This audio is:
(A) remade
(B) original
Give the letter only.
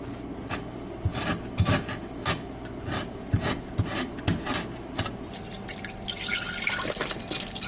B